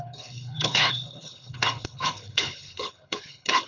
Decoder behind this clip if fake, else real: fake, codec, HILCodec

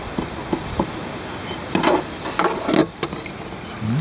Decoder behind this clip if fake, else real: real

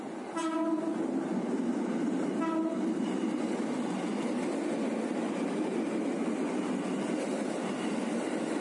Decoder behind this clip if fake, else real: real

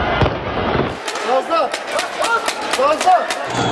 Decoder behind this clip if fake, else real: real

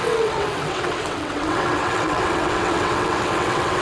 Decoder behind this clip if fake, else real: fake, vocoder, WaveNeXt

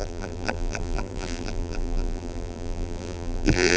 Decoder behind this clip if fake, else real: fake, vocoder, BigVGAN v2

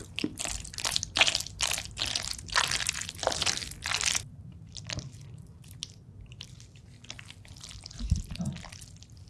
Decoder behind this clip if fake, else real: real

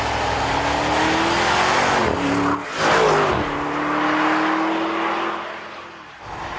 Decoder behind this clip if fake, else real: real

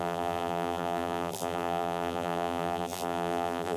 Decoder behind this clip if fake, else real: fake, vocoder, BigVGAN v2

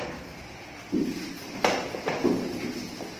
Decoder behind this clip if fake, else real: real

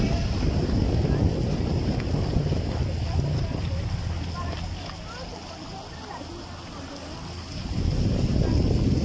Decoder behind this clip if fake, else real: real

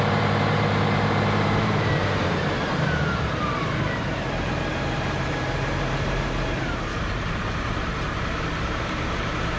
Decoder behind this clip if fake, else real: fake, vocoder, BigVGAN v2